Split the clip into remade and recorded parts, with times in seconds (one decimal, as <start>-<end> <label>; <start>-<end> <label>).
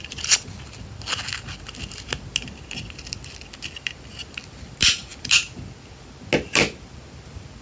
0.0-7.6 recorded